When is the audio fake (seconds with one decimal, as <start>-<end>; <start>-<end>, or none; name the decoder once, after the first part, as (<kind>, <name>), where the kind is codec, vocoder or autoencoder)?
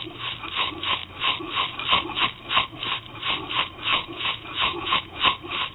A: 3.9-5.2 (vocoder, Vocos)